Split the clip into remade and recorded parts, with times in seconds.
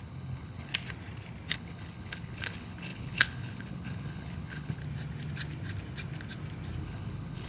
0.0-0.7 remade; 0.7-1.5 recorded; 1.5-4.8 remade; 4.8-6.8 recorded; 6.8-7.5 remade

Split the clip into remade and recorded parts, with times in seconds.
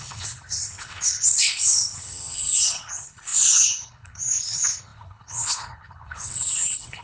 0.0-7.0 remade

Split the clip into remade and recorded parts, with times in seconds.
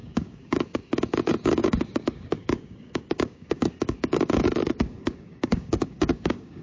0.0-6.6 remade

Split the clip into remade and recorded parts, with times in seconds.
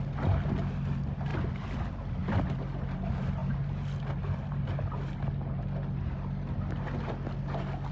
0.0-7.9 recorded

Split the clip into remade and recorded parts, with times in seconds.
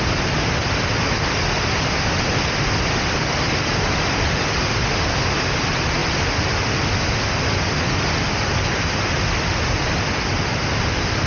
0.0-11.3 recorded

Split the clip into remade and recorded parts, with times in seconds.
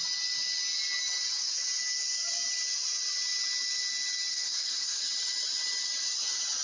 0.0-4.3 recorded; 4.3-5.0 remade; 5.0-6.6 recorded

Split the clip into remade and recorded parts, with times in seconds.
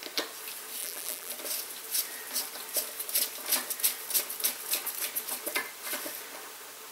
0.0-0.8 recorded; 0.8-1.3 remade; 1.3-6.9 recorded